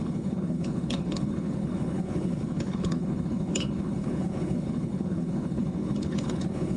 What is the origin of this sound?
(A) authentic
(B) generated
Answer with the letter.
B